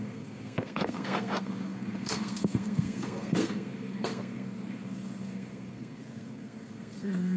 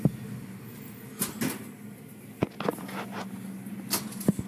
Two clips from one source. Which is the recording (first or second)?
second